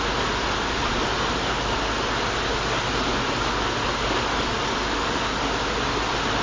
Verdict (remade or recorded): recorded